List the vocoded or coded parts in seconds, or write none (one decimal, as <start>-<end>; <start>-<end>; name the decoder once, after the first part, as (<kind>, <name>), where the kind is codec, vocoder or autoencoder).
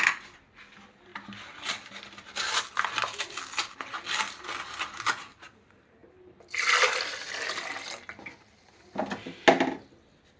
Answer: 6.0-9.0 (vocoder, BigVGAN v2)